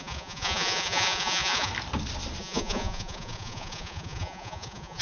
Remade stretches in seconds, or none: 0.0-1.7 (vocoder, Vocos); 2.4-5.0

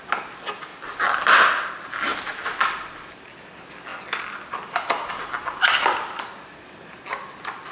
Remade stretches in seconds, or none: 0.7-1.7 (vocoder, BigVGAN v2); 2.1-3.1

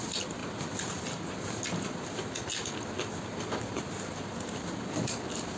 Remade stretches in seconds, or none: none

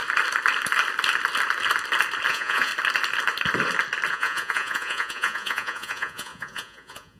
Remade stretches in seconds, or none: 2.3-2.7 (vocoder, Vocos); 4.1-7.2

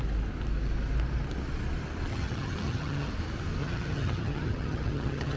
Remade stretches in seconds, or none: 2.1-3.1 (vocoder, HiFi-GAN); 3.6-5.4

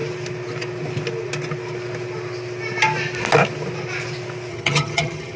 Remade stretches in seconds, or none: 4.5-5.4 (vocoder, HiFi-GAN)

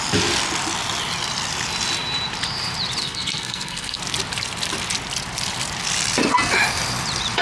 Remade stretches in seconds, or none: 3.0-4.0 (codec, SNAC)